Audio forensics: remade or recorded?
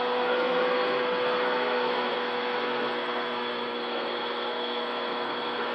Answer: remade